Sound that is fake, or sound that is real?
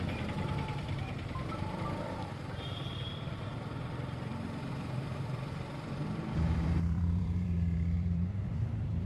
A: fake